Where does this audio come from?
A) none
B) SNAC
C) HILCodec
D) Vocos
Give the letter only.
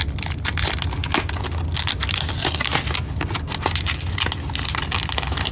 A